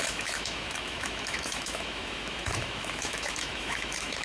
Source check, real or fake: fake